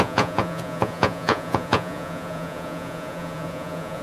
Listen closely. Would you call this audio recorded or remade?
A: remade